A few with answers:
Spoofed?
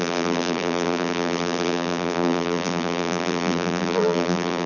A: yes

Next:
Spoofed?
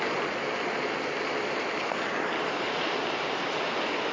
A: no